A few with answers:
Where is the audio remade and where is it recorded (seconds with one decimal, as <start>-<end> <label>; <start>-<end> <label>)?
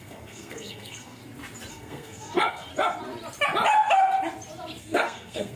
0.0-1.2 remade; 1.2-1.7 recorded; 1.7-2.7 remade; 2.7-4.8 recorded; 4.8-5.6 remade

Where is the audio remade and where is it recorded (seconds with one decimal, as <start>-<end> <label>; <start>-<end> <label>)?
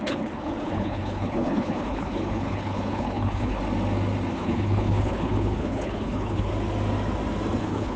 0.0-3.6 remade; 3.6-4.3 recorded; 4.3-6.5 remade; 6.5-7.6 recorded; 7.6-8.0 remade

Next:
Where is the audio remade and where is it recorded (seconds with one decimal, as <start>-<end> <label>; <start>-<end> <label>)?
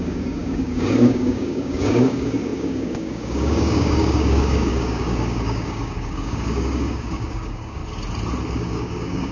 0.0-7.8 remade; 7.8-8.5 recorded; 8.5-9.3 remade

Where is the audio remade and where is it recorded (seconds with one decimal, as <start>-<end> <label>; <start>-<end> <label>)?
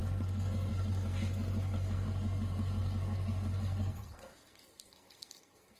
0.0-5.8 remade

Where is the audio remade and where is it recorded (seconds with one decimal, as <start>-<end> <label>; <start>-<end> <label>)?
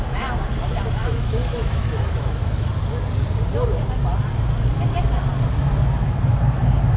0.0-1.0 recorded; 1.0-2.7 remade; 2.7-7.0 recorded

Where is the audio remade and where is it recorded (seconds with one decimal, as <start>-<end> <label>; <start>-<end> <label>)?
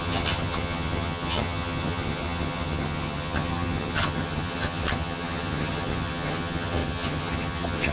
0.0-7.9 remade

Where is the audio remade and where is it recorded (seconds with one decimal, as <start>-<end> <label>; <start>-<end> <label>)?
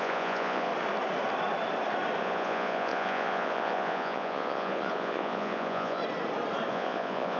0.0-0.7 remade; 0.7-2.2 recorded; 2.2-6.0 remade; 6.0-6.7 recorded; 6.7-7.4 remade